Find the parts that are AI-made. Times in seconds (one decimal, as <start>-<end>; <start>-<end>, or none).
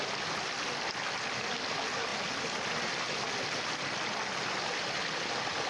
none